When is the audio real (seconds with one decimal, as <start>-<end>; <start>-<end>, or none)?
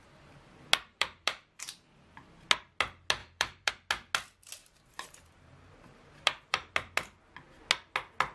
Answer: 0.0-0.9; 1.7-3.2; 3.7-4.6; 6.7-8.3